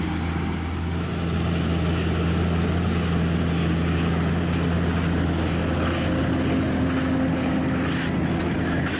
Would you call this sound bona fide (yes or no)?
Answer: yes